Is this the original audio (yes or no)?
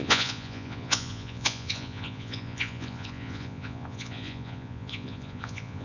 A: no